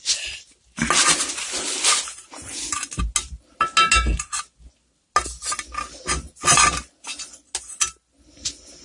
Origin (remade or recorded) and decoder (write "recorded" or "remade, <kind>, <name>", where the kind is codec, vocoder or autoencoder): recorded